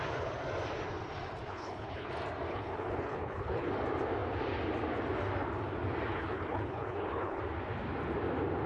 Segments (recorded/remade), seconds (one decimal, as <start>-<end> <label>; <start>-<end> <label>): 0.0-1.5 recorded; 1.5-2.1 remade; 2.1-2.5 recorded; 2.5-3.7 remade; 3.7-6.1 recorded; 6.1-7.4 remade; 7.4-8.7 recorded